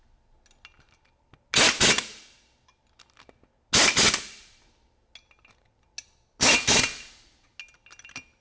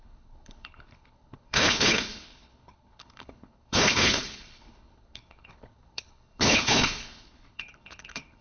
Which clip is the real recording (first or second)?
first